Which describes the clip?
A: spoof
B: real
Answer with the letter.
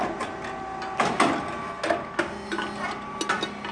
B